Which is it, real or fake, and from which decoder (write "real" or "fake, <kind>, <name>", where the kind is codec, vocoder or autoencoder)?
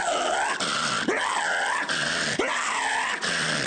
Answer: real